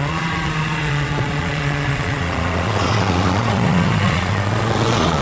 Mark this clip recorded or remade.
remade